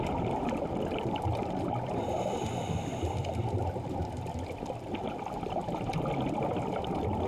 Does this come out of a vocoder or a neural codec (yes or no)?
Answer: no